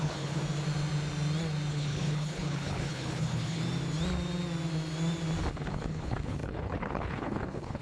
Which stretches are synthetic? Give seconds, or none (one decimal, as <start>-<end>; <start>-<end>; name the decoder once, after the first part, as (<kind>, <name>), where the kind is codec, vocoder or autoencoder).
0.0-0.4 (codec, HILCodec); 1.7-3.6; 5.5-7.8